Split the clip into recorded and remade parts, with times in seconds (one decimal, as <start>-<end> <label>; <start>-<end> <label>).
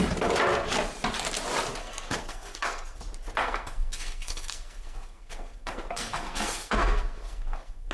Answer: 0.0-1.8 recorded; 1.8-3.0 remade; 3.0-3.4 recorded; 3.4-7.9 remade